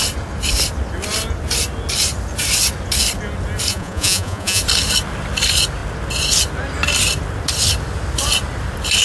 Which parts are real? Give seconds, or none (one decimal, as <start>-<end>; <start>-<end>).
0.0-3.7; 4.6-9.0